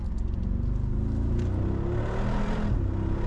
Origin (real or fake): real